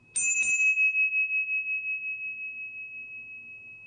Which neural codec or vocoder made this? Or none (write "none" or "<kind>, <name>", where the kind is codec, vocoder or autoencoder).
none